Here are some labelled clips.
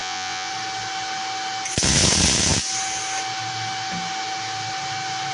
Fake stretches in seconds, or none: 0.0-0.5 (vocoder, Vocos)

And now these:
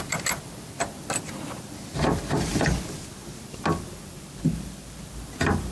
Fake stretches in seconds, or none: 0.0-2.5 (vocoder, BigVGAN v2); 3.4-5.7